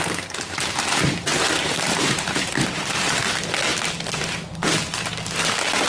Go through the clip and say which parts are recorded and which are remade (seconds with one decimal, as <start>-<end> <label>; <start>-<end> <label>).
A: 0.0-1.3 recorded; 1.3-2.9 remade; 2.9-5.9 recorded